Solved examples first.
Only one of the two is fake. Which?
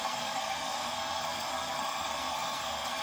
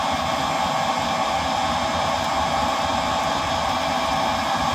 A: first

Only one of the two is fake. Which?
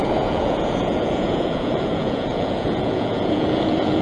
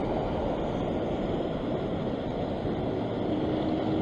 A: first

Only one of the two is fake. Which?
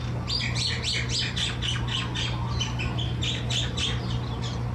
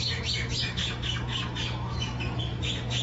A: second